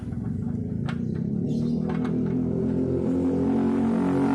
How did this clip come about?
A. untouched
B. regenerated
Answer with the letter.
A